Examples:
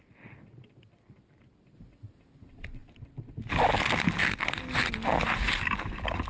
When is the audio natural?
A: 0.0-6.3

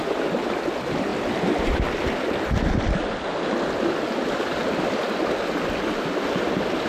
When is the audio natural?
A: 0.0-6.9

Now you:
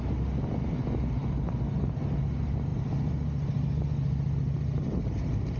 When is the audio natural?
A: 0.0-5.6